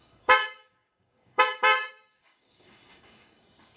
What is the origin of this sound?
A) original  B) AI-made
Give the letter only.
B